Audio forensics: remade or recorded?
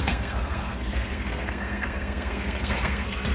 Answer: remade